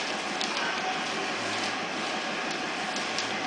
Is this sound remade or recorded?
recorded